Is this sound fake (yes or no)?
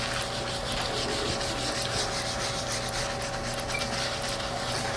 no